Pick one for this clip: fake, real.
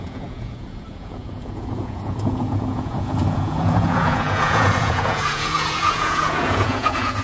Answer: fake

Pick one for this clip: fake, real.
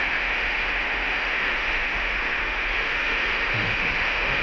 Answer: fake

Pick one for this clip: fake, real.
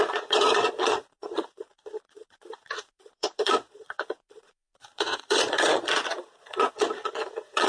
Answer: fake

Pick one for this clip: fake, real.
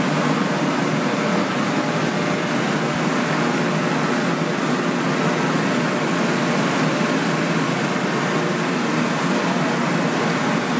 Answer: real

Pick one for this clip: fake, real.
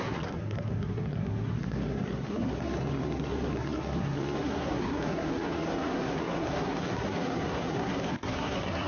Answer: fake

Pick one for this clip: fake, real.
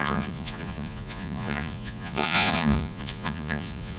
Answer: fake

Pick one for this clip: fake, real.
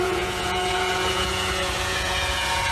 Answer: fake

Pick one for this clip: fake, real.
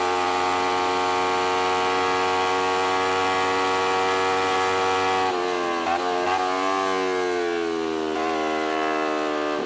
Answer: real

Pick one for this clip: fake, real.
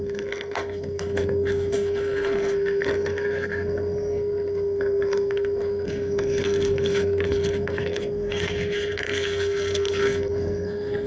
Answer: fake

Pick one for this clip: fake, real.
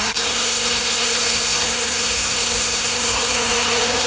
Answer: fake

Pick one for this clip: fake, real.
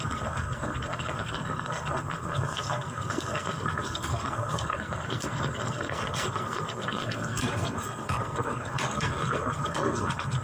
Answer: fake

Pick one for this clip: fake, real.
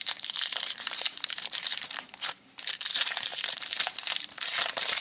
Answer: fake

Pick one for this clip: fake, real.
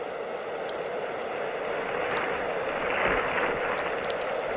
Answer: real